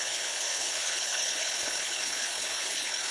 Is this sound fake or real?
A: fake